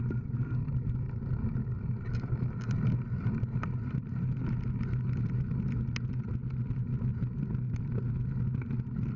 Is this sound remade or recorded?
recorded